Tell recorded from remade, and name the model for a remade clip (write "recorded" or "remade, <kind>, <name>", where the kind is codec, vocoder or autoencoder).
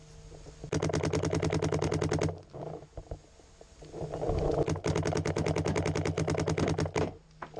recorded